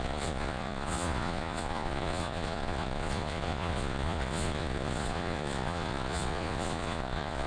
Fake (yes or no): yes